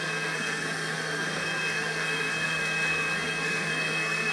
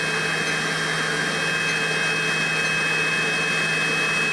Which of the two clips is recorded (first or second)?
second